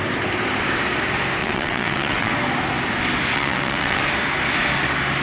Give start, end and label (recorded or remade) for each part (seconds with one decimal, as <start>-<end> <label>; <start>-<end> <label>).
0.0-1.4 recorded; 1.4-2.3 remade; 2.3-3.3 recorded; 3.3-4.0 remade; 4.0-5.2 recorded